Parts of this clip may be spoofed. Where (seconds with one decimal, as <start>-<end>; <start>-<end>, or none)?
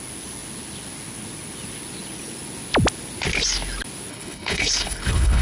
4.1-5.4